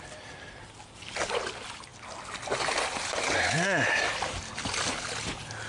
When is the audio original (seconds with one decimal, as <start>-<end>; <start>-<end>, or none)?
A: 0.0-5.7